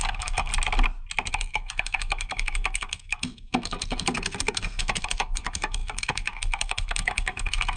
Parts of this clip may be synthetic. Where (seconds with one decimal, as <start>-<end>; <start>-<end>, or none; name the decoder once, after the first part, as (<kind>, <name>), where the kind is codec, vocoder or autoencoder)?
0.0-0.5 (codec, SNAC); 1.3-7.8